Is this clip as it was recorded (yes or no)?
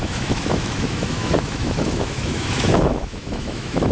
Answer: no